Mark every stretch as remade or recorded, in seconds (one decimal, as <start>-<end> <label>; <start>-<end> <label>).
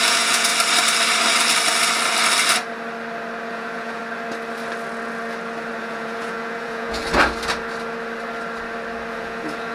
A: 0.0-0.5 remade; 0.5-3.5 recorded; 3.5-4.0 remade; 4.0-5.8 recorded; 5.8-7.0 remade; 7.0-9.1 recorded; 9.1-9.7 remade